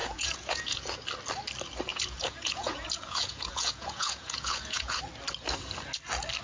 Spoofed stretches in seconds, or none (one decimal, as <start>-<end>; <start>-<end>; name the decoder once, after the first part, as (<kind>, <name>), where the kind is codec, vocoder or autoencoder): 0.0-0.8 (vocoder, Vocos); 1.9-5.0